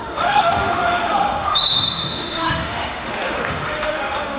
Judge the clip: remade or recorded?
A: remade